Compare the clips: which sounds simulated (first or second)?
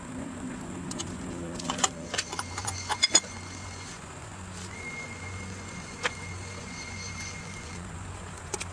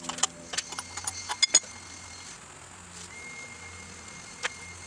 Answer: first